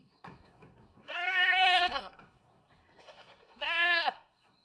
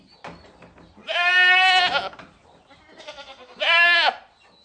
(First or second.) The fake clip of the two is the first